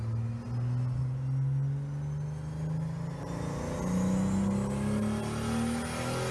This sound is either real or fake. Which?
real